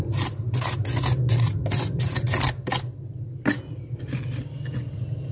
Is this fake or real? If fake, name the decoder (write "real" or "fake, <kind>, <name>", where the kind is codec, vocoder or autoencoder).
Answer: real